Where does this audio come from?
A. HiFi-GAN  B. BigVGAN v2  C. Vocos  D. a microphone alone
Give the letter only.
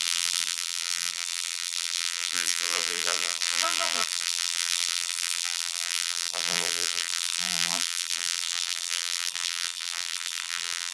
B